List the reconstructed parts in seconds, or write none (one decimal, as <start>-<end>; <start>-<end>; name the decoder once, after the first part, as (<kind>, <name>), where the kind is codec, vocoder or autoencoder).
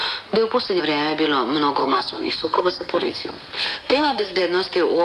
1.8-4.4 (codec, SNAC)